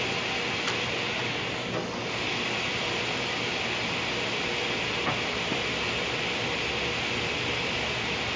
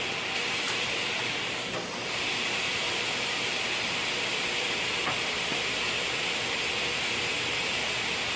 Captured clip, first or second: first